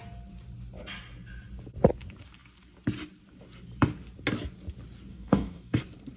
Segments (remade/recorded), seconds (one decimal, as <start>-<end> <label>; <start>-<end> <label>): 0.0-5.1 recorded; 5.1-5.8 remade; 5.8-6.2 recorded